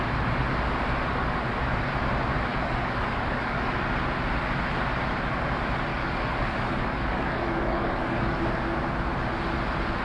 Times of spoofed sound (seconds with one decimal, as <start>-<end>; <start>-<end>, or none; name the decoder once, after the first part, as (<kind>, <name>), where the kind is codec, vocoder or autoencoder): 2.5-3.7 (codec, DAC); 5.9-8.5